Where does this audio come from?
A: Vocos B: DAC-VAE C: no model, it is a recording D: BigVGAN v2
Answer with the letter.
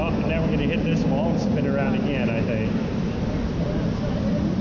C